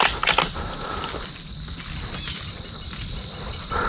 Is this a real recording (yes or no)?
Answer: yes